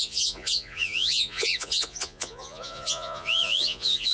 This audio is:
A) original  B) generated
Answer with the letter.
B